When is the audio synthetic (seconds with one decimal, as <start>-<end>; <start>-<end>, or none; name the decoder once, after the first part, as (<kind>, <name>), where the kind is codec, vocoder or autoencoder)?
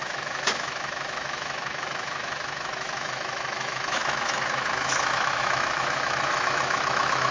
0.0-7.3 (autoencoder, DAC-VAE)